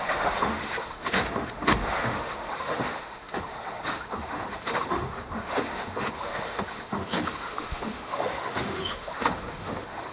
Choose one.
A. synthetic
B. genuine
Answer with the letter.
A